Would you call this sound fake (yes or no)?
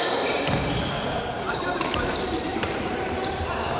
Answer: yes